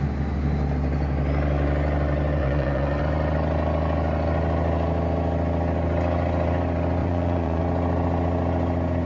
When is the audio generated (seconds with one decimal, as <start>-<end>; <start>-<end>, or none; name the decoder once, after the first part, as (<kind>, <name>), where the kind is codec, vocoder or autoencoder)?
2.4-3.0 (vocoder, Vocos); 7.0-7.6